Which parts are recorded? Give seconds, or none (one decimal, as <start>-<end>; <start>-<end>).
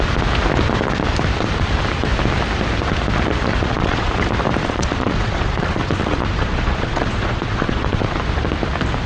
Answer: 0.0-3.5; 4.1-4.6; 8.2-9.1